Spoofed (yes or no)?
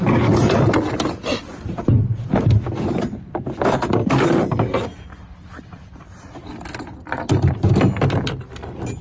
no